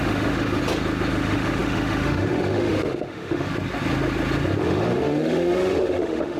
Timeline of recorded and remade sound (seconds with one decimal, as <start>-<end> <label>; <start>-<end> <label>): 0.0-0.6 remade; 0.6-1.1 recorded; 1.1-3.5 remade; 3.5-4.6 recorded; 4.6-6.4 remade